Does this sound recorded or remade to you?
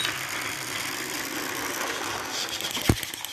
recorded